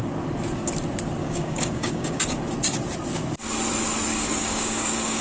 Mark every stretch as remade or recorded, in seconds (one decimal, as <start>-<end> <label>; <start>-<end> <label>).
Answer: 0.0-1.2 recorded; 1.2-2.2 remade; 2.2-4.1 recorded; 4.1-5.2 remade